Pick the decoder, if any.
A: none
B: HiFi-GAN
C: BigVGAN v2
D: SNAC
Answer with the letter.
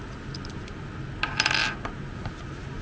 A